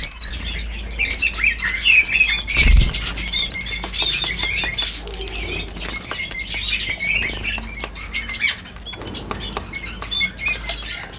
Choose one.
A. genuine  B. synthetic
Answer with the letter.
A